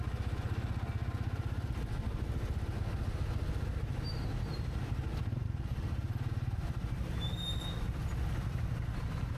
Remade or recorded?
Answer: recorded